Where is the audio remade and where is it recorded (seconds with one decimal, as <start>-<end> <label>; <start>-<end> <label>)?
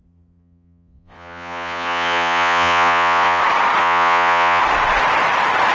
0.0-3.4 remade; 3.4-3.8 recorded; 3.8-4.6 remade; 4.6-5.7 recorded